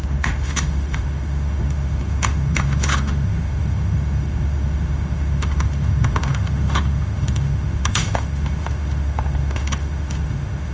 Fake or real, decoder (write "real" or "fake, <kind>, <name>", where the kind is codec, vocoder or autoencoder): fake, autoencoder, DAC-VAE